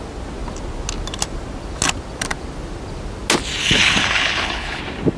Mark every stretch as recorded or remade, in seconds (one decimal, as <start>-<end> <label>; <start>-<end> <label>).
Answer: 0.0-3.6 recorded; 3.6-4.8 remade; 4.8-5.2 recorded